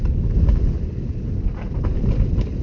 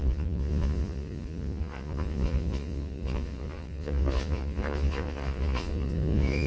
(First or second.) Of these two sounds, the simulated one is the second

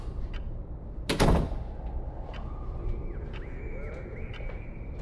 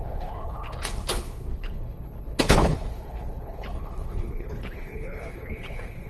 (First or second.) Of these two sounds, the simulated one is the second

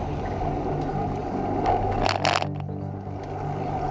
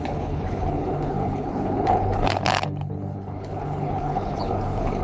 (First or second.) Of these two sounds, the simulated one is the second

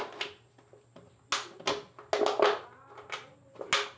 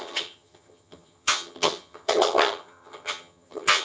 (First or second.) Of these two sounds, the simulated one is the second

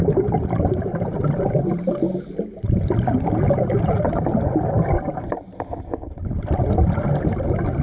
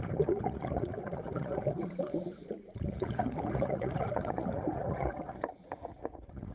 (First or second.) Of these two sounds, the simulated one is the second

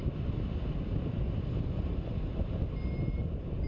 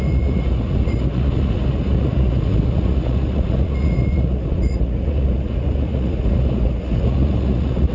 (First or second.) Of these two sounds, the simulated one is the second